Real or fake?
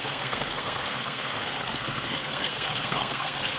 fake